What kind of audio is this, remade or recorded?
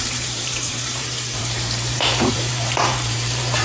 remade